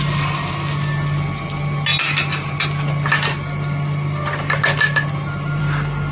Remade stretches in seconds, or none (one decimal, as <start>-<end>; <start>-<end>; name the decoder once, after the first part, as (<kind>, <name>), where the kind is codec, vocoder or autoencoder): none